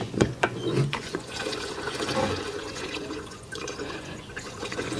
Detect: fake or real fake